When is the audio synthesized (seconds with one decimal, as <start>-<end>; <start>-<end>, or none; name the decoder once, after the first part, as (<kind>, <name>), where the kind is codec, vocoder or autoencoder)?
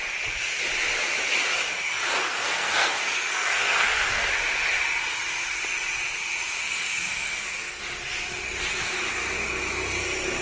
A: 2.1-4.3 (codec, SNAC); 6.6-7.8